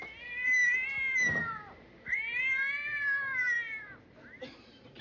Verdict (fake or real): fake